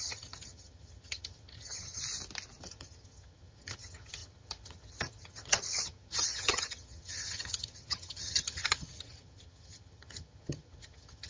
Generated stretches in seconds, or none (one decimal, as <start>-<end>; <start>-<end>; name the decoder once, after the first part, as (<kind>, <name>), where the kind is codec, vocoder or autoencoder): 0.0-2.0 (vocoder, HiFi-GAN); 2.6-11.3

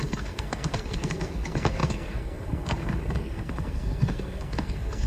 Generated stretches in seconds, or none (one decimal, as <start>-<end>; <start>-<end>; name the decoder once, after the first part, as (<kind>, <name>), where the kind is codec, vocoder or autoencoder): 0.0-5.1 (codec, SNAC)

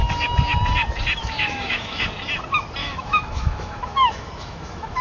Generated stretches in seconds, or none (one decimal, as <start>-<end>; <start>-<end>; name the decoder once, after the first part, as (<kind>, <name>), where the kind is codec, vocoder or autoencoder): 0.0-0.6 (autoencoder, DAC-VAE); 1.2-2.1; 2.8-5.0